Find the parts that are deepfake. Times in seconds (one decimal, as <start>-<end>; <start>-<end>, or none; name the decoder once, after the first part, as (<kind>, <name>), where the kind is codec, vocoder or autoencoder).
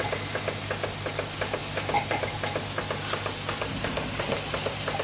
none